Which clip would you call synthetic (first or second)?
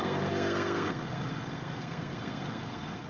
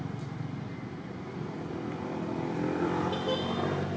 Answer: first